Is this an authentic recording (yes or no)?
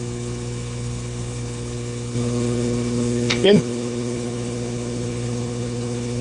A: no